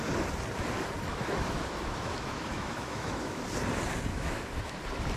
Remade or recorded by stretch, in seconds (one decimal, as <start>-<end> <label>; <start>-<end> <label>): 0.0-1.1 recorded; 1.1-3.4 remade; 3.4-4.1 recorded; 4.1-4.8 remade; 4.8-5.2 recorded

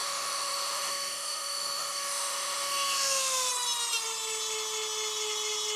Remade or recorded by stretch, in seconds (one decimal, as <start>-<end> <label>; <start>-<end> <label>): 0.0-3.5 remade; 3.5-5.8 recorded

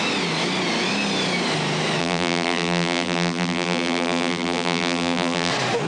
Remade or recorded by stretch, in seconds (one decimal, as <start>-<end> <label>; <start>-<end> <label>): 0.0-2.0 recorded; 2.0-5.5 remade; 5.5-5.9 recorded

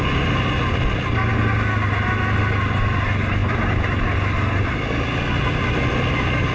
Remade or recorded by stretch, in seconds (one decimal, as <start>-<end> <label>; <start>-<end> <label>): 0.0-6.5 recorded